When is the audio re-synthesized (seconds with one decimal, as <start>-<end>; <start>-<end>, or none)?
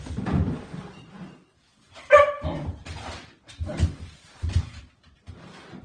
3.7-4.8